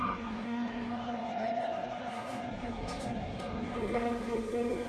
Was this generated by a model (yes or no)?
yes